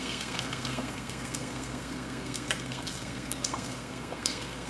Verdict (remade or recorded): remade